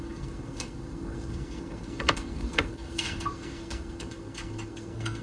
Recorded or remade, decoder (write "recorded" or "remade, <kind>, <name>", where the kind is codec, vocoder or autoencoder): remade, codec, SNAC